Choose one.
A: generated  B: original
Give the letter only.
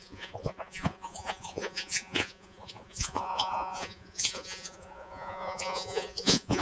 A